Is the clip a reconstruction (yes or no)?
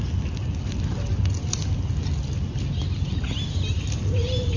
no